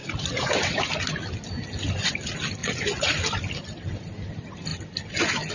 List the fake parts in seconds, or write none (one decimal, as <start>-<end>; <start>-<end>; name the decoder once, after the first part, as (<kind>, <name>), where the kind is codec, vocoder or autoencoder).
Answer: 0.0-0.9 (vocoder, Vocos); 2.6-3.2